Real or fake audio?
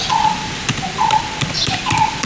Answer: real